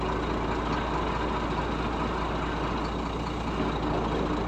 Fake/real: real